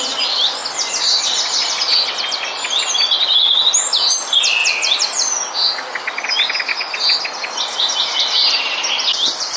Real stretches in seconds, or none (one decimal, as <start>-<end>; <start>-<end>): 0.0-9.6